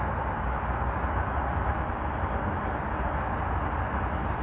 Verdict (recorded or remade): recorded